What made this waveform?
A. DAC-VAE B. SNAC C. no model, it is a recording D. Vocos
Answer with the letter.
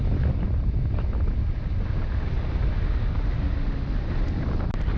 C